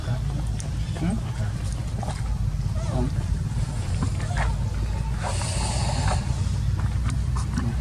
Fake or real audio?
real